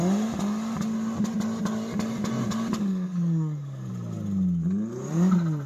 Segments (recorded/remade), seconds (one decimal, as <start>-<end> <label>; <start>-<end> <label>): 0.0-2.9 recorded; 2.9-3.9 remade; 3.9-5.7 recorded